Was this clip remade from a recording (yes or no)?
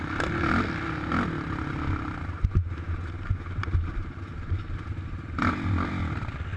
no